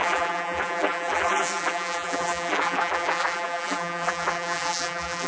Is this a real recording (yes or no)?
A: no